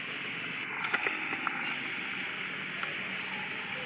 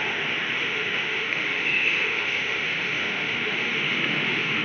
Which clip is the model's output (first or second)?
second